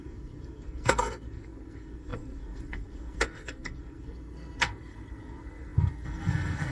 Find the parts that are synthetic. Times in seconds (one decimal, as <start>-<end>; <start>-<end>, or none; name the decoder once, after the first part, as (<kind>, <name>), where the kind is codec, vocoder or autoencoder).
0.0-6.7 (codec, SNAC)